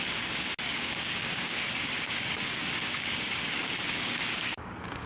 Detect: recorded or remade remade